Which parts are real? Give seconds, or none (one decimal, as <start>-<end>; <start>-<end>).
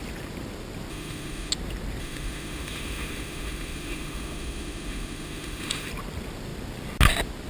0.0-0.9; 1.5-2.0; 5.9-7.5